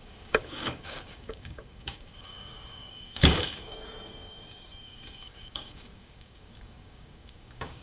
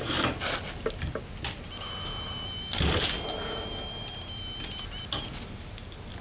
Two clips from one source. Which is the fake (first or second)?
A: first